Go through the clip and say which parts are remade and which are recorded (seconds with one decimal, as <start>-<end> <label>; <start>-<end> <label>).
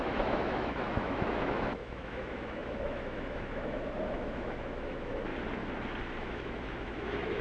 0.0-5.3 remade; 5.3-6.2 recorded; 6.2-7.4 remade